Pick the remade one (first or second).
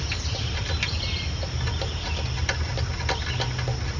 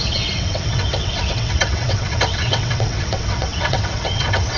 second